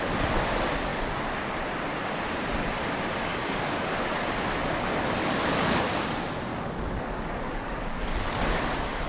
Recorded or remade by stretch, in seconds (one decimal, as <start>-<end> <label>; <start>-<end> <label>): 0.0-0.9 recorded; 0.9-1.4 remade; 1.4-3.3 recorded; 3.3-4.0 remade; 4.0-5.2 recorded; 5.2-5.8 remade; 5.8-6.5 recorded; 6.5-8.6 remade; 8.6-9.1 recorded